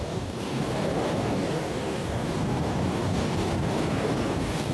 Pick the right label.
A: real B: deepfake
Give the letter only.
B